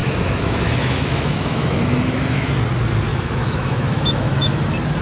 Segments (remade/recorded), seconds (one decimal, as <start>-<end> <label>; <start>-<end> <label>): 0.0-2.5 remade; 2.5-3.1 recorded; 3.1-4.6 remade; 4.6-5.0 recorded